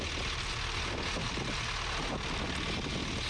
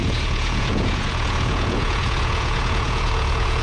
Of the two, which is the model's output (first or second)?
second